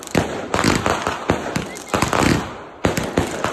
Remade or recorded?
recorded